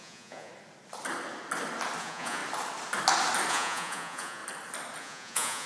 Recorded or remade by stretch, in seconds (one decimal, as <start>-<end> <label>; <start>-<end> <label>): 0.0-0.5 remade; 0.5-2.0 recorded; 2.0-2.4 remade; 2.4-3.5 recorded; 3.5-4.4 remade; 4.4-5.0 recorded; 5.0-5.7 remade